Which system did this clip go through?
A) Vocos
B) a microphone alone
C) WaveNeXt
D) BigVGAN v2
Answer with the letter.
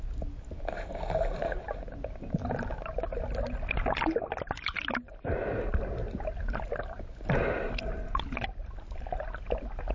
B